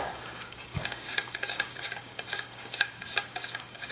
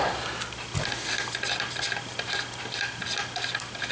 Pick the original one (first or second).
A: second